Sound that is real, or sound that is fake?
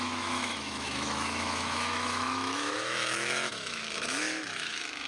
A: fake